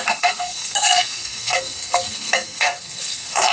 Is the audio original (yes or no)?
no